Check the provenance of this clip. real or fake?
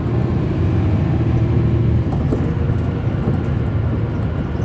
real